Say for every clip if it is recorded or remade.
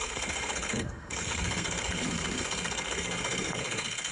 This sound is remade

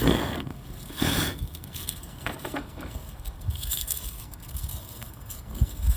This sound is remade